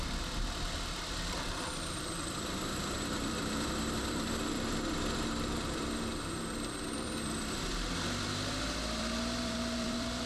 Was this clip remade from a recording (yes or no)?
yes